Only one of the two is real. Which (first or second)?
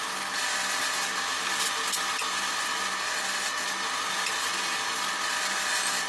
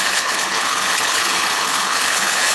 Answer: first